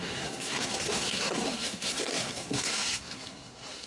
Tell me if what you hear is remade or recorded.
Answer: remade